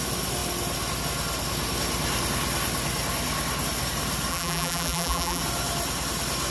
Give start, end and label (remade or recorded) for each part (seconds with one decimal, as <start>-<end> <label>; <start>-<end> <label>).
0.0-4.3 recorded; 4.3-5.4 remade; 5.4-6.5 recorded